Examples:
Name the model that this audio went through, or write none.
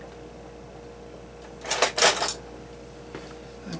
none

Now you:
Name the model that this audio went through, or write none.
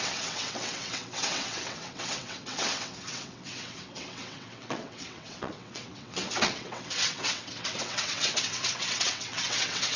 vocoder, WaveNeXt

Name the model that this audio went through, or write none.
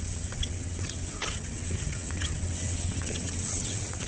vocoder, WaveNeXt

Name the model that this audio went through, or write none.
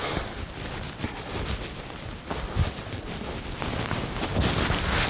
none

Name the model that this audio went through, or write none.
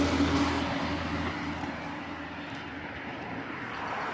none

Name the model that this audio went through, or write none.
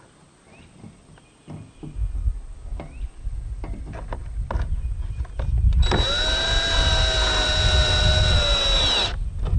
none